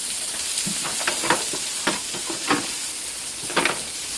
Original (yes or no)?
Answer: yes